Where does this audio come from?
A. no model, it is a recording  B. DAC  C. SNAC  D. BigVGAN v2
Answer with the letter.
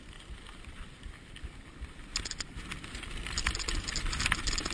A